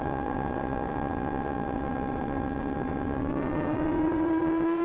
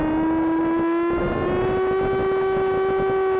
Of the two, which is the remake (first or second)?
first